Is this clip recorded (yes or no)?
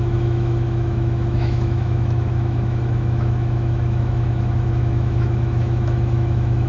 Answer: no